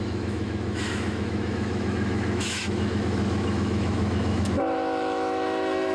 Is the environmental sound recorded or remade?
remade